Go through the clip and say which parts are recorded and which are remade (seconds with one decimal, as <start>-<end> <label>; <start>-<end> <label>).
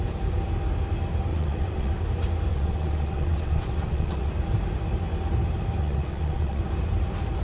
0.0-1.3 recorded; 1.3-1.9 remade; 1.9-2.5 recorded; 2.5-4.3 remade; 4.3-5.8 recorded; 5.8-6.6 remade; 6.6-7.4 recorded